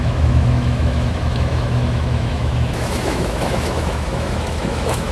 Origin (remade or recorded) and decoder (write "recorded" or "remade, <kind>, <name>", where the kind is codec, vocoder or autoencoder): remade, autoencoder, DAC-VAE